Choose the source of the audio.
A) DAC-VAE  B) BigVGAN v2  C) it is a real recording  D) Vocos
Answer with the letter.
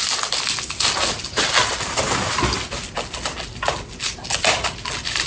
C